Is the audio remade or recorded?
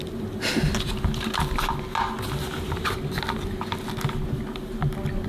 recorded